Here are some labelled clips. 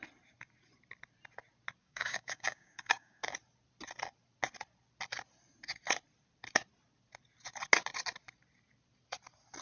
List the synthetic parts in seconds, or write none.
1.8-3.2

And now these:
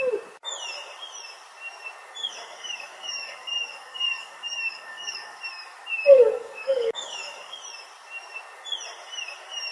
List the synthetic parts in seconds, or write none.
2.2-5.4; 6.1-7.6

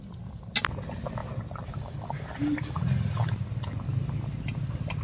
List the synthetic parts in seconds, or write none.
none

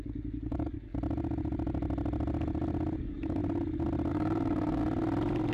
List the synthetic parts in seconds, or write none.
0.0-0.9; 3.0-3.4; 4.1-4.8

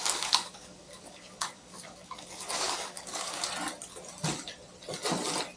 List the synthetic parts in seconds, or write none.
0.0-3.4